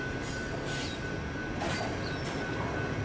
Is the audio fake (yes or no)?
no